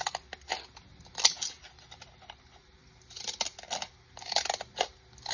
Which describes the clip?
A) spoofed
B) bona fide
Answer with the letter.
B